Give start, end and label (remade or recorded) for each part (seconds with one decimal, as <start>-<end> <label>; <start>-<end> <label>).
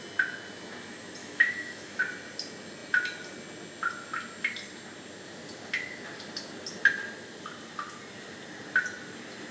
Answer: 0.0-1.2 recorded; 1.2-2.0 remade; 2.0-9.5 recorded